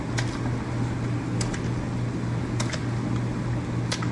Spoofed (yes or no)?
no